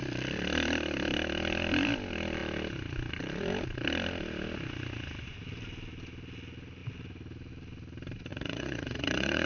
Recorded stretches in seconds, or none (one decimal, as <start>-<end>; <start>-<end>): 0.0-8.3